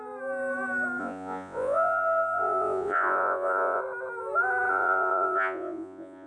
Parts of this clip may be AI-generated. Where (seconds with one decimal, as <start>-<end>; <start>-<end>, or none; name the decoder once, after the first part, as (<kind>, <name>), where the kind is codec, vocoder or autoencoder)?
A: 1.0-3.8 (vocoder, Vocos); 4.7-6.3